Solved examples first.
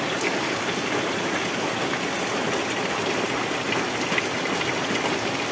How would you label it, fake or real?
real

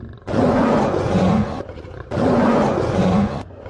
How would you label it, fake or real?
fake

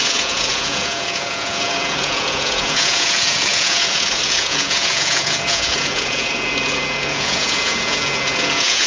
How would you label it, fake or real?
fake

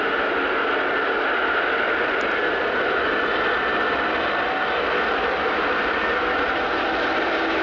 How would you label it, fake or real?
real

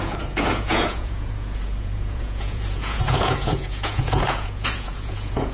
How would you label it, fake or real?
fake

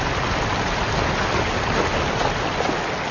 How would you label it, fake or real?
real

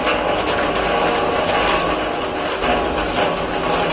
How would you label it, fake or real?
real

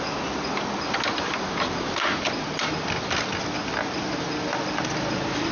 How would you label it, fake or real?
real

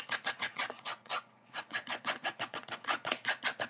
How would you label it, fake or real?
fake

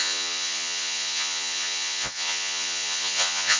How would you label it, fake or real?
fake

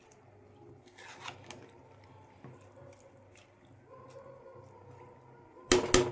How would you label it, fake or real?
real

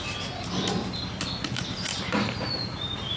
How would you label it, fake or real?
real